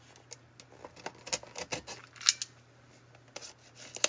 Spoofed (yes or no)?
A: no